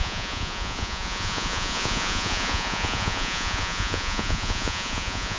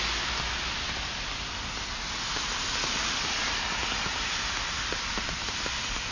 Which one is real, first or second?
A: second